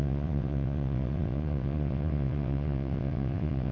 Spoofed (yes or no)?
yes